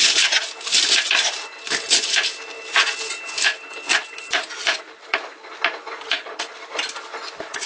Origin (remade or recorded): recorded